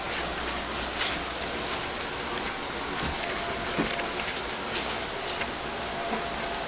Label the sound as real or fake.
real